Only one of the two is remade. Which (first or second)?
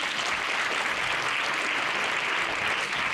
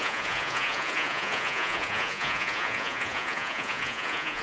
second